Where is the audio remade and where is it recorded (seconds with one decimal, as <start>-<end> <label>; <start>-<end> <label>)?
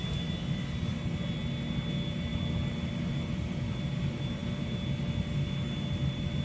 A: 0.0-6.4 recorded